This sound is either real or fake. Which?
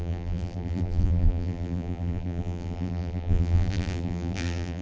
fake